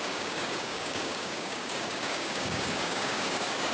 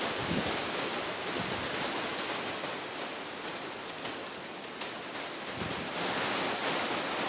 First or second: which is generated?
first